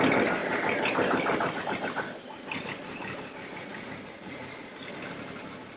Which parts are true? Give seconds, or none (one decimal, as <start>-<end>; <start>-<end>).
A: 0.0-3.6; 4.7-5.8